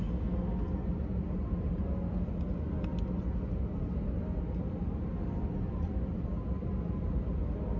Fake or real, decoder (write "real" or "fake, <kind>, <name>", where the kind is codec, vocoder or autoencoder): real